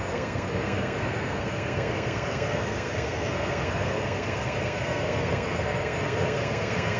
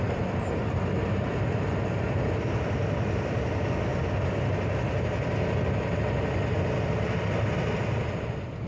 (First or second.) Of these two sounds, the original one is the second